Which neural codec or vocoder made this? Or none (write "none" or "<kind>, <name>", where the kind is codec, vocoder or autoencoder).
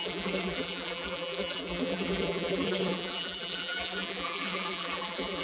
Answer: vocoder, BigVGAN v2